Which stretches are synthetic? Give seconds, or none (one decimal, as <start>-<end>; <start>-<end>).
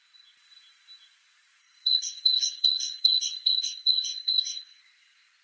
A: 1.6-4.8